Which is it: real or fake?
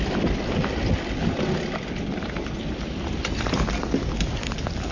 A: real